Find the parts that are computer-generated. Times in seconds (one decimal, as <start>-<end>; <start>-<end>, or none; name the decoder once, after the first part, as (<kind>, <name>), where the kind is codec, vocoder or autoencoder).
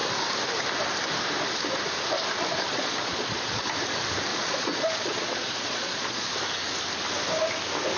2.7-3.6 (vocoder, Vocos); 4.3-6.3